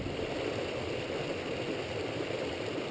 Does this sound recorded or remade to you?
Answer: recorded